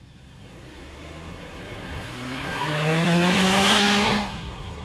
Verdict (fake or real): fake